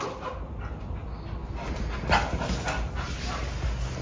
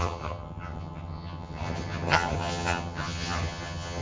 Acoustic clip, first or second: first